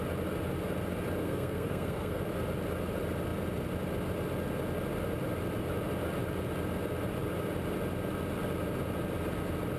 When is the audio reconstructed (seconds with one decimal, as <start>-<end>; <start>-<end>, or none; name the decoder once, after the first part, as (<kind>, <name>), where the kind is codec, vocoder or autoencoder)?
1.2-2.2 (codec, SNAC)